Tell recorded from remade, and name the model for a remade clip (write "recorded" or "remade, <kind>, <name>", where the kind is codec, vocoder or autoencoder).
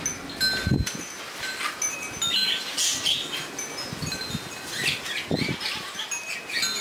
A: recorded